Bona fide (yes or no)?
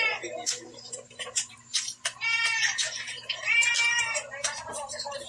no